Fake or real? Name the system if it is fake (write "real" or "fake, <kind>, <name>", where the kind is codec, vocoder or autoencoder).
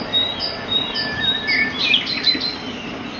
real